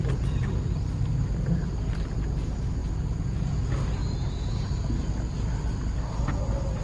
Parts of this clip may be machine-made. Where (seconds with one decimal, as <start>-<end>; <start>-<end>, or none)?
2.8-3.6; 4.0-4.7